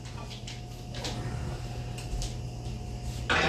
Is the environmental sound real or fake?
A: real